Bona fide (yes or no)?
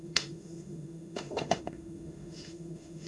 no